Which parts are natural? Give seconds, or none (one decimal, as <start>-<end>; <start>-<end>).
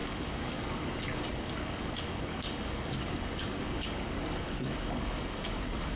none